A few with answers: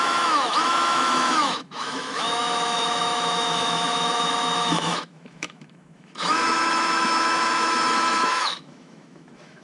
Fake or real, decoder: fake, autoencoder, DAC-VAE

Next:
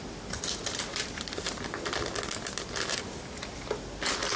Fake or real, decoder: real